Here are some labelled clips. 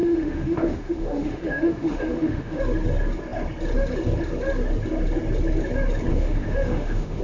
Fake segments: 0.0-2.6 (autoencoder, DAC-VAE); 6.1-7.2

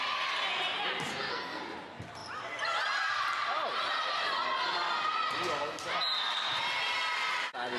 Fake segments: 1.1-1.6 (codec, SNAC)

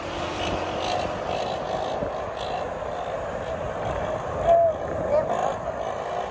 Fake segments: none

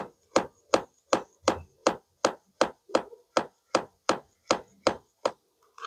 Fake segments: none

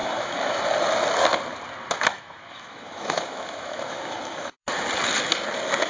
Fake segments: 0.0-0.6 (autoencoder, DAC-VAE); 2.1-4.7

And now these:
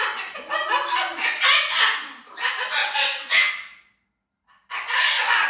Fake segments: 2.8-3.5 (vocoder, WaveNeXt)

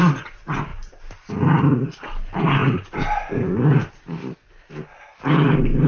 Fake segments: none

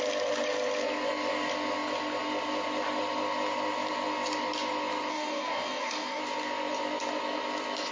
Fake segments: 5.1-6.2 (codec, DAC)